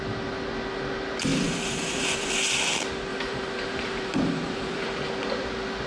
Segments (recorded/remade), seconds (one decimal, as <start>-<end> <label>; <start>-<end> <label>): 0.0-1.3 recorded; 1.3-2.3 remade; 2.3-3.1 recorded; 3.1-5.1 remade; 5.1-5.9 recorded